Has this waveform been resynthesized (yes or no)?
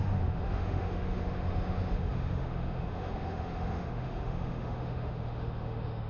yes